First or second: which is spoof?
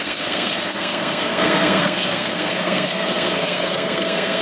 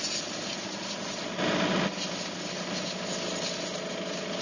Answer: first